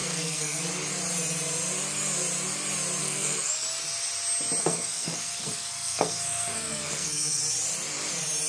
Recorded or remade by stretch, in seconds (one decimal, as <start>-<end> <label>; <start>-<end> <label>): 0.0-0.6 remade; 0.6-3.0 recorded; 3.0-3.5 remade; 3.5-4.6 recorded; 4.6-7.4 remade; 7.4-8.5 recorded